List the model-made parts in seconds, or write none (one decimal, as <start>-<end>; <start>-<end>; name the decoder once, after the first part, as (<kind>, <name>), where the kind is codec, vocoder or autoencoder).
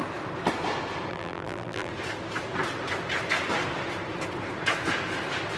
1.1-1.9 (vocoder, BigVGAN v2)